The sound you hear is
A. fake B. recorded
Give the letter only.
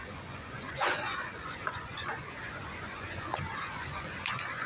A